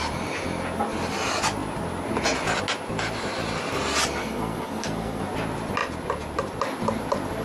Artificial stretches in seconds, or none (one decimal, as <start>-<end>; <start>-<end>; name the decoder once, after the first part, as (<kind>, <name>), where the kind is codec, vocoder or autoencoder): 4.2-5.2 (codec, SNAC)